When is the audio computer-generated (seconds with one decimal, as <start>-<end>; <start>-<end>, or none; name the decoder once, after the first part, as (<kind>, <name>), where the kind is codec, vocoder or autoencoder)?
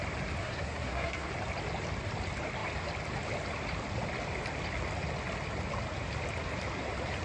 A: 0.4-1.3 (codec, SNAC)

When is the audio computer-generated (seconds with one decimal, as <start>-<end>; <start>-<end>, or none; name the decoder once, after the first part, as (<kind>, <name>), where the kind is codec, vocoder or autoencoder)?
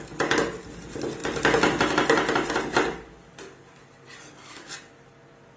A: none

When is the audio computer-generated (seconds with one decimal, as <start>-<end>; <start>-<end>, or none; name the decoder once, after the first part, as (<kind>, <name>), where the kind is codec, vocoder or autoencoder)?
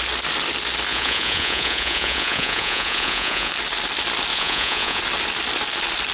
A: 0.9-3.5 (vocoder, Vocos); 4.3-5.0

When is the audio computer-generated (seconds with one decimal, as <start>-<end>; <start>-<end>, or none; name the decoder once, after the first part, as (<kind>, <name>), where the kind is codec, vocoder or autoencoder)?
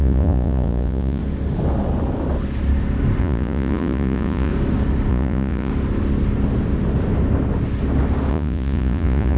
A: 0.0-1.2 (vocoder, Vocos); 3.2-4.5; 5.1-5.7; 8.3-9.4